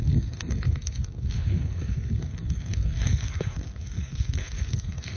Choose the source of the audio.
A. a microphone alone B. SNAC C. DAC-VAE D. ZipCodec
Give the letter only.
B